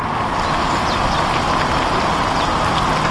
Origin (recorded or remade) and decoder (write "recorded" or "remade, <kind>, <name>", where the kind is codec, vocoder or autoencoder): recorded